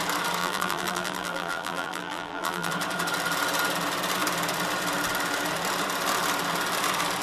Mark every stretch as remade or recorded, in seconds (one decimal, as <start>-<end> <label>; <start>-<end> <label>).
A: 0.0-0.4 recorded; 0.4-2.7 remade; 2.7-7.2 recorded